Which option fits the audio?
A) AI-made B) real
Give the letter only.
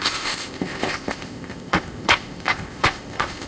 A